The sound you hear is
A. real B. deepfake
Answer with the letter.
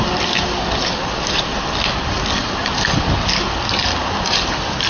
A